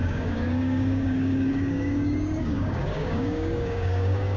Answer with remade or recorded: remade